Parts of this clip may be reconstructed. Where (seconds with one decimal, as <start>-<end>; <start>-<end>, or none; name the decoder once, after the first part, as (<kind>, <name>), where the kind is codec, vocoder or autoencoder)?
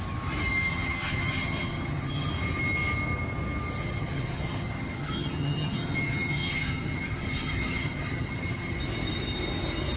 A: 0.7-2.3 (vocoder, HiFi-GAN); 3.8-8.8